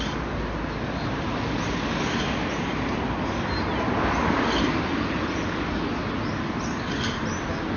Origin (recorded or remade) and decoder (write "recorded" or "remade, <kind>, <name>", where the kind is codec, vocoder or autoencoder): recorded